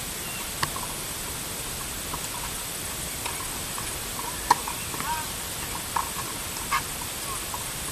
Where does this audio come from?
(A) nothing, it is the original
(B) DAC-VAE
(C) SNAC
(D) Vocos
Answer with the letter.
A